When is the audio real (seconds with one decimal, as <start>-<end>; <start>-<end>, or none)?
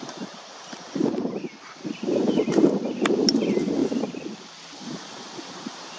0.0-6.0